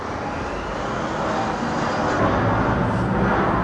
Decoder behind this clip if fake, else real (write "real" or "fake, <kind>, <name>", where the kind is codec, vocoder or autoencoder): real